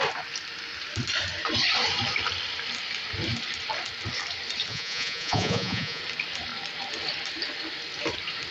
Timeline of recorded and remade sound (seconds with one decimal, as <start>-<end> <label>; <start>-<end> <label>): 0.0-4.7 recorded; 4.7-6.0 remade; 6.0-8.5 recorded